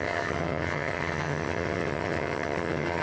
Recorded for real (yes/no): no